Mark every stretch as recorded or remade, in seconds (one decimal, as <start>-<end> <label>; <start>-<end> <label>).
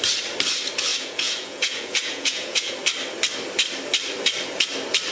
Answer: 0.0-0.9 recorded; 0.9-2.7 remade; 2.7-5.1 recorded